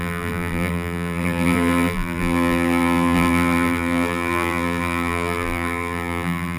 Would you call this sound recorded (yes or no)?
no